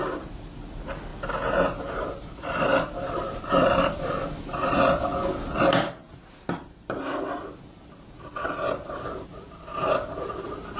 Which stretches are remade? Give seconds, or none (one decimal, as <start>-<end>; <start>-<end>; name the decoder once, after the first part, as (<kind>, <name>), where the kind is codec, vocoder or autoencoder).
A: 0.0-1.1 (vocoder, BigVGAN v2); 1.8-5.1; 7.4-10.8